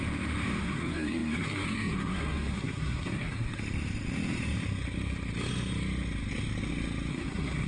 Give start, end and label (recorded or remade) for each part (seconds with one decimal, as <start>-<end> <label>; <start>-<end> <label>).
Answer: 0.0-0.6 recorded; 0.6-3.5 remade; 3.5-7.1 recorded; 7.1-7.7 remade